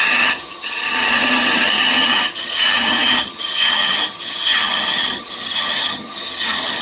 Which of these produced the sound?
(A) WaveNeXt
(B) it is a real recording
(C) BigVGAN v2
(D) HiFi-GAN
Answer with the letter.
D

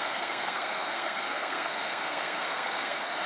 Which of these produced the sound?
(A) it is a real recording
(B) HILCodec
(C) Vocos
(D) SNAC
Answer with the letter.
D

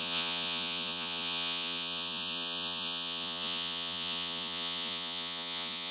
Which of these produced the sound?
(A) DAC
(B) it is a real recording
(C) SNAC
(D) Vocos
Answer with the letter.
D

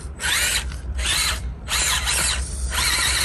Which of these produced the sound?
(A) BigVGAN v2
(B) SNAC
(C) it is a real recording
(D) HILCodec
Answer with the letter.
A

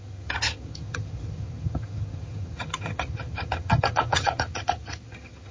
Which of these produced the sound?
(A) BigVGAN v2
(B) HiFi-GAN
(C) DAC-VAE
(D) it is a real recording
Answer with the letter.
B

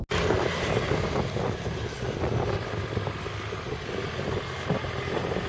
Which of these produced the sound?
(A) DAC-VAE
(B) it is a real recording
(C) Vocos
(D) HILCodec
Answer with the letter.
B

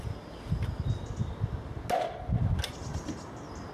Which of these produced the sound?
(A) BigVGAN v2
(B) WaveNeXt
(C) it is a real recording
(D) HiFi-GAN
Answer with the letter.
C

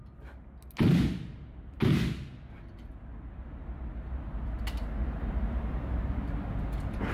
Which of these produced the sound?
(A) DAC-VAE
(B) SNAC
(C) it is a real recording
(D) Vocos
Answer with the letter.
C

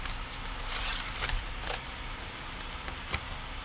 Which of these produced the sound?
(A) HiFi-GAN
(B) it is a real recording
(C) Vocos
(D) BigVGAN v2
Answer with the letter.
B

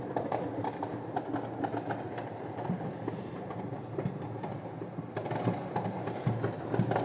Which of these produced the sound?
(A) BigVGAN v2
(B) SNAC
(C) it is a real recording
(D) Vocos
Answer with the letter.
C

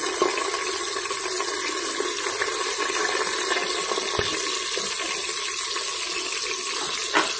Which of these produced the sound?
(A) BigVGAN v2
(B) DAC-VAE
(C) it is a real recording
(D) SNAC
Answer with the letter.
C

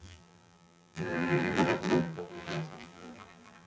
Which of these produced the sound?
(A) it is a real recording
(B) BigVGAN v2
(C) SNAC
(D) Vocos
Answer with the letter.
B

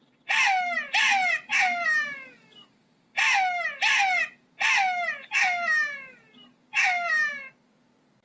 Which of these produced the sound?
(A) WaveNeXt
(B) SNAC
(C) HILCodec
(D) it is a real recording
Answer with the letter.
D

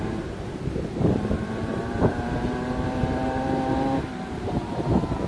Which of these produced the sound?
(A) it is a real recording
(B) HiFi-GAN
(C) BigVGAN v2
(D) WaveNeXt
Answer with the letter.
C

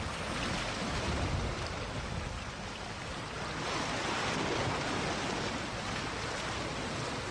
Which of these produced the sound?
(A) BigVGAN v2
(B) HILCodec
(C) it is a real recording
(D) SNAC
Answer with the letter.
C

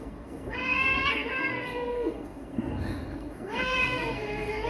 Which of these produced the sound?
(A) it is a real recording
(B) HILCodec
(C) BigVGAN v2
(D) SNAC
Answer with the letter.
D